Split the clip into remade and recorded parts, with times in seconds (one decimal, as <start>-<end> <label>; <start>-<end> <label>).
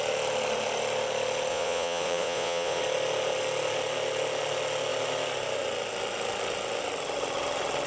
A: 0.0-1.5 recorded; 1.5-2.8 remade; 2.8-7.9 recorded